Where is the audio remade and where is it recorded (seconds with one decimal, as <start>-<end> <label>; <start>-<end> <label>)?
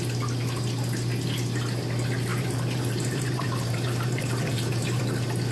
0.0-2.3 recorded; 2.3-5.0 remade; 5.0-5.5 recorded